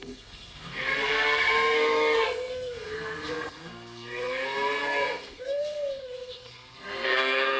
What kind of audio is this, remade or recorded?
remade